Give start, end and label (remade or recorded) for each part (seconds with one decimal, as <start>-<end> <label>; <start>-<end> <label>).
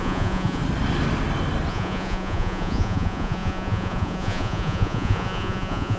0.0-0.6 remade; 0.6-1.7 recorded; 1.7-6.0 remade